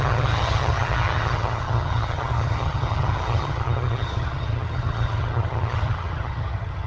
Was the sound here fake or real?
fake